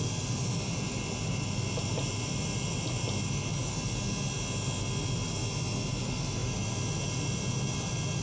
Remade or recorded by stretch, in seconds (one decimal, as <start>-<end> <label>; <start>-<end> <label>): 0.0-3.6 remade; 3.6-5.0 recorded; 5.0-5.4 remade; 5.4-6.0 recorded; 6.0-8.2 remade

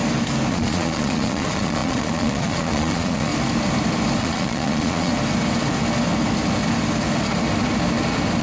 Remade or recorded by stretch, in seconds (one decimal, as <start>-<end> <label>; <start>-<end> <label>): 0.0-0.5 recorded; 0.5-3.3 remade; 3.3-4.2 recorded; 4.2-5.1 remade; 5.1-8.4 recorded

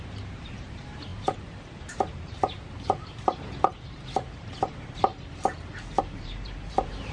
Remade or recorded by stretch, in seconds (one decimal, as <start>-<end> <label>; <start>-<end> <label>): 0.0-5.1 remade; 5.1-6.0 recorded; 6.0-7.1 remade

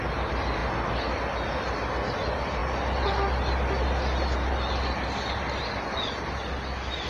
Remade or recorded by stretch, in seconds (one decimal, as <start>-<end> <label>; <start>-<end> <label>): 0.0-7.1 recorded

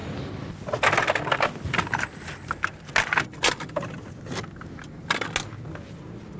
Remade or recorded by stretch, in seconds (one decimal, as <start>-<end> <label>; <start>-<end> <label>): 0.0-2.9 remade; 2.9-6.4 recorded